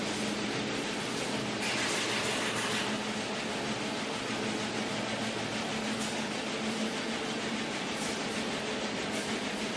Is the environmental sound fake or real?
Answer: real